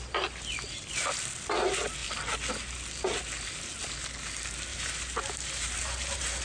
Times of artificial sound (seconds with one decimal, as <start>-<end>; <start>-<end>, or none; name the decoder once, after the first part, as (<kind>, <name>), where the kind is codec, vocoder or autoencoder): 4.7-6.4 (vocoder, BigVGAN v2)